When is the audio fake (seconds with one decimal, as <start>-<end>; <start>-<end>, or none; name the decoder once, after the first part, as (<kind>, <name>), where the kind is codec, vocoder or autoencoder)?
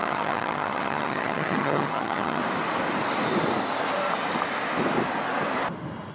0.0-2.4 (vocoder, HiFi-GAN)